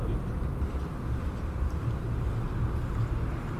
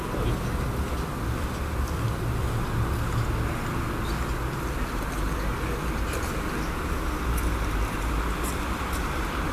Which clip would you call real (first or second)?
second